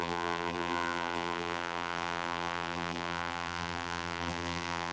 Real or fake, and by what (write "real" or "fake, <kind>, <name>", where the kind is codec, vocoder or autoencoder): fake, vocoder, BigVGAN v2